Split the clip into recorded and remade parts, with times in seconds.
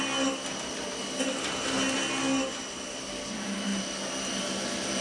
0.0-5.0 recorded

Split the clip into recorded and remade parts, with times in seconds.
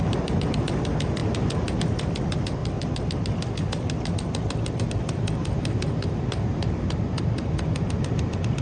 0.0-1.2 remade; 1.2-1.8 recorded; 1.8-2.6 remade; 2.6-4.9 recorded; 4.9-5.6 remade; 5.6-7.2 recorded; 7.2-8.6 remade